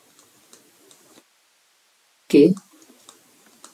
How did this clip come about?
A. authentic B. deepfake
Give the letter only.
A